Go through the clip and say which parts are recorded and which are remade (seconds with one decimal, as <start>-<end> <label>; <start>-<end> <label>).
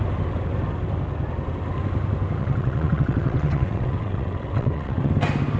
0.0-2.4 recorded; 2.4-5.1 remade; 5.1-5.6 recorded